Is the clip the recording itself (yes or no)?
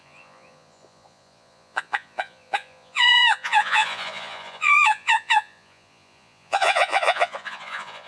no